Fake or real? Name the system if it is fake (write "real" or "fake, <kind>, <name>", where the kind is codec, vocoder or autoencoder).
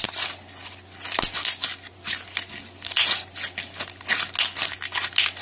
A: real